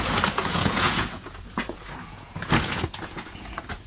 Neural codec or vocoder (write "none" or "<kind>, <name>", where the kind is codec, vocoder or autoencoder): vocoder, Vocos